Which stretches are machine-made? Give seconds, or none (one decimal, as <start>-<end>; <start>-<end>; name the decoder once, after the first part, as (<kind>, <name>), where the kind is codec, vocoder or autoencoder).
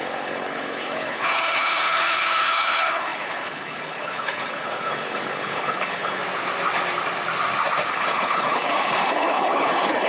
0.0-6.2 (codec, HILCodec); 7.9-10.1